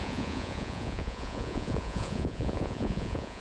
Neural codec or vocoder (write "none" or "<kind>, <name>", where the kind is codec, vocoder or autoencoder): vocoder, Vocos